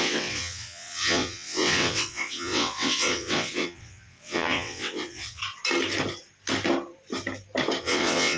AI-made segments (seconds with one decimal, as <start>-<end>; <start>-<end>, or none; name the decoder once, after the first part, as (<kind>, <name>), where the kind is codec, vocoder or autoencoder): 0.0-5.4 (vocoder, WaveNeXt); 7.8-8.4